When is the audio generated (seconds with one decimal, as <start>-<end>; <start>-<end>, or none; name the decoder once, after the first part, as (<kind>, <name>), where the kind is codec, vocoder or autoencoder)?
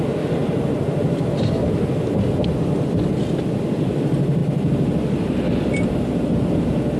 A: none